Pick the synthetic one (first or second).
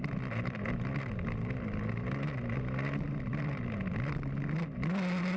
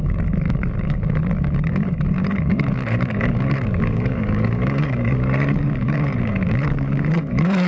second